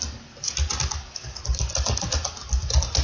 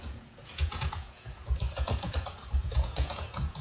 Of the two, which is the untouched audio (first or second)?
first